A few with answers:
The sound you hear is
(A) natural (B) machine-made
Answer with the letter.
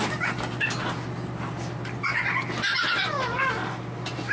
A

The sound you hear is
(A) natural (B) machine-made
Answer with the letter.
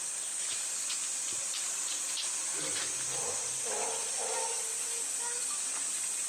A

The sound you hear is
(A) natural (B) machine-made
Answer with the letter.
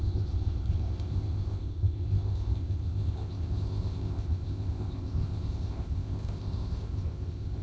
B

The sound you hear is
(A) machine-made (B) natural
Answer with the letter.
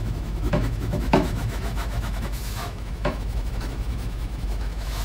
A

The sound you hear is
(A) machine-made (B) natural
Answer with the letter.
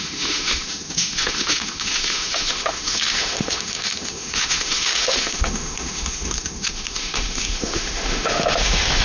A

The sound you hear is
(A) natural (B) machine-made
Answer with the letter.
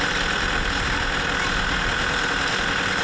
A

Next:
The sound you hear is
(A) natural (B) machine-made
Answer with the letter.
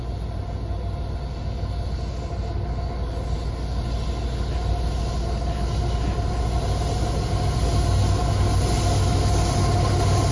A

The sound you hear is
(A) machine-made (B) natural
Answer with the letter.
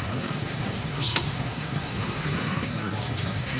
A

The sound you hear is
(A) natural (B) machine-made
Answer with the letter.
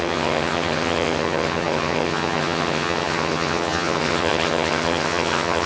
B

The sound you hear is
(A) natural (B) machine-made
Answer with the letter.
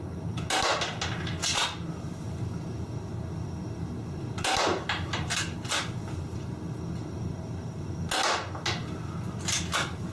A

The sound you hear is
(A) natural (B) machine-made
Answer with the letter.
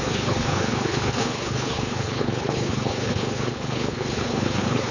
B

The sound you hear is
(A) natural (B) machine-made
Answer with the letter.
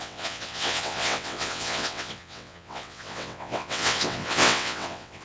B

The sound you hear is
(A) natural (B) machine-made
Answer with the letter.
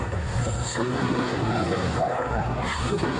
B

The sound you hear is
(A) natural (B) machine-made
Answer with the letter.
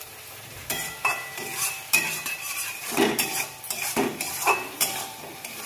B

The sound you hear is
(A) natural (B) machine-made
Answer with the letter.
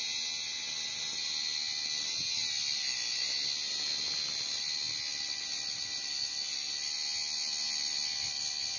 A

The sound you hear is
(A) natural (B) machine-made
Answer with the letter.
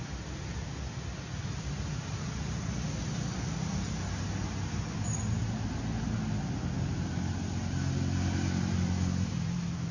A